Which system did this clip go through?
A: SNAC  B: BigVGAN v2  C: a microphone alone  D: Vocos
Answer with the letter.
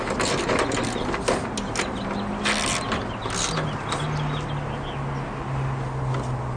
C